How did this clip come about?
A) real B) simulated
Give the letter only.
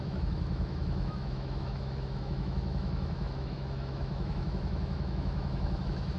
B